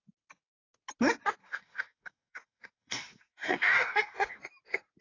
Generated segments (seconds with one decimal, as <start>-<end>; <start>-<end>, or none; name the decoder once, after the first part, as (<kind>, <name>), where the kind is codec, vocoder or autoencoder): 1.4-4.4 (codec, DAC)